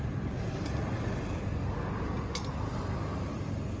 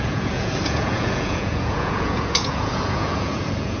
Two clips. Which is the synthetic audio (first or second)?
second